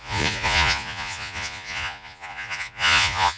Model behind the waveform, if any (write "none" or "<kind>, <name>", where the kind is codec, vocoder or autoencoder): vocoder, Vocos